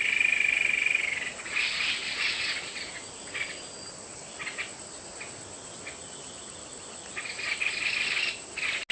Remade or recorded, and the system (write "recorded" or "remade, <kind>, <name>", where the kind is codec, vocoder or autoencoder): recorded